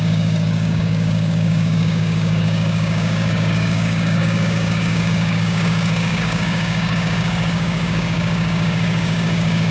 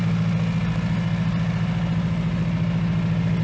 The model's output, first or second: first